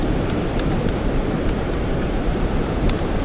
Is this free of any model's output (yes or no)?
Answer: no